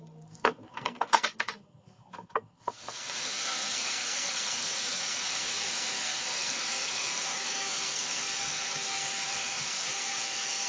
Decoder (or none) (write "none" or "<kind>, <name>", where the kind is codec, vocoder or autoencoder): codec, SNAC